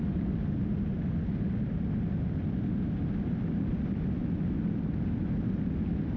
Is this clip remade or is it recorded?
recorded